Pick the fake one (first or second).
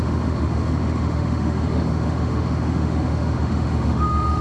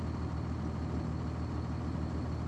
first